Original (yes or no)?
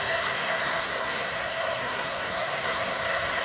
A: no